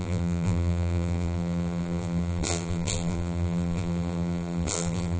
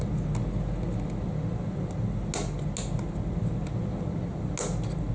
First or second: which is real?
second